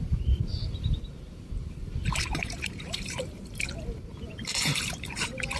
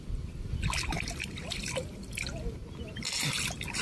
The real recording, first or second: second